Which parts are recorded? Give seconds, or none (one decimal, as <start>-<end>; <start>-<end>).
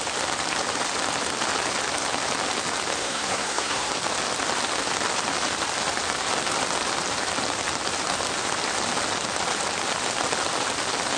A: 0.0-3.0; 3.9-11.2